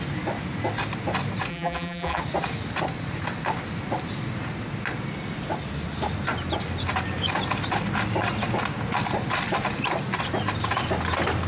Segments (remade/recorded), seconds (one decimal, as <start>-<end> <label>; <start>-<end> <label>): 0.0-1.5 recorded; 1.5-2.2 remade; 2.2-11.5 recorded

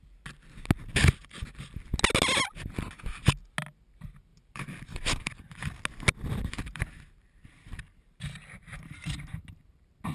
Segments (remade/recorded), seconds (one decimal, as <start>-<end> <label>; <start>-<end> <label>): 0.0-4.3 recorded; 4.3-5.8 remade; 5.8-6.3 recorded; 6.3-9.4 remade; 9.4-10.1 recorded

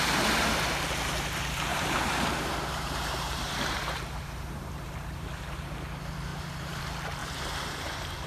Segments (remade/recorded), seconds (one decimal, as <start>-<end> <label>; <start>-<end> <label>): 0.0-1.7 recorded; 1.7-5.7 remade; 5.7-6.3 recorded; 6.3-6.8 remade; 6.8-7.2 recorded; 7.2-8.3 remade

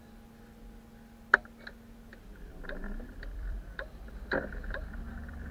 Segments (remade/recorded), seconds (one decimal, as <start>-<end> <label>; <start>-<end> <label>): 0.0-2.1 recorded; 2.1-5.5 remade

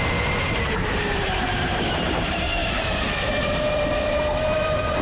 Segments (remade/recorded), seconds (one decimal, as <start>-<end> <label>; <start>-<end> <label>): 0.0-2.6 remade; 2.6-4.0 recorded; 4.0-5.0 remade

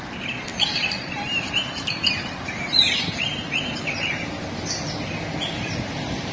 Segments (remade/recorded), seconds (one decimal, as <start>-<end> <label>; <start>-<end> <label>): 0.0-0.5 recorded; 0.5-4.3 remade; 4.3-6.3 recorded

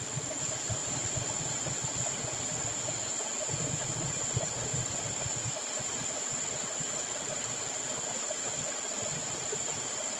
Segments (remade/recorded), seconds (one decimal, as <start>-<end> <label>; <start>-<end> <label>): 0.0-10.2 recorded